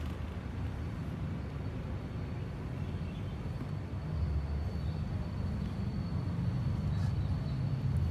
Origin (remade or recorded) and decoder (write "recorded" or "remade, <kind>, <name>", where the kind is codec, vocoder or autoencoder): recorded